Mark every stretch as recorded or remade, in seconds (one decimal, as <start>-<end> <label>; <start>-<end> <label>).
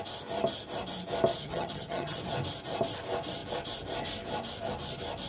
0.0-1.3 recorded; 1.3-2.2 remade; 2.2-5.3 recorded